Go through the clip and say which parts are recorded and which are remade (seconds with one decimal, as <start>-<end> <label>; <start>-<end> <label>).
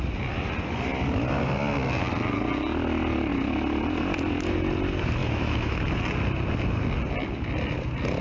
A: 0.0-5.2 recorded; 5.2-5.8 remade; 5.8-8.2 recorded